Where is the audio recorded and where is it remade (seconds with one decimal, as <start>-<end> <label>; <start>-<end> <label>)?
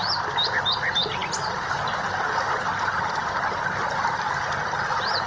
0.0-5.3 recorded